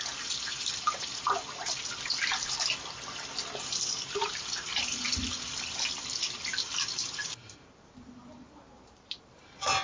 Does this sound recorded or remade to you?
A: remade